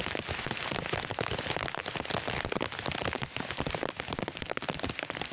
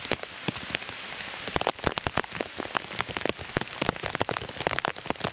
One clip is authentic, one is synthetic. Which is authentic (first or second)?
second